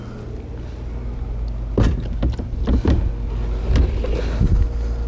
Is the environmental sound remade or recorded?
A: recorded